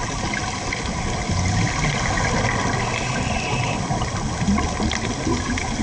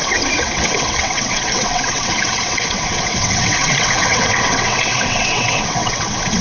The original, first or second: first